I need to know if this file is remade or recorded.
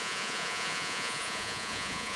remade